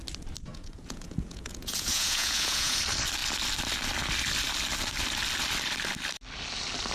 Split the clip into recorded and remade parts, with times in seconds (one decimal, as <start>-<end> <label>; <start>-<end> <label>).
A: 0.0-0.5 recorded; 0.5-2.8 remade; 2.8-6.9 recorded